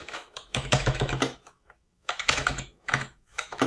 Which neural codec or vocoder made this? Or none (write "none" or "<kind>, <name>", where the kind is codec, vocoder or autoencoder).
autoencoder, DAC-VAE